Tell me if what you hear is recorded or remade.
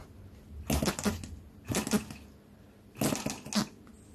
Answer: recorded